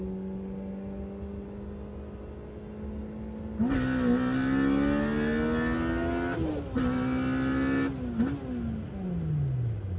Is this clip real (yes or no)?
yes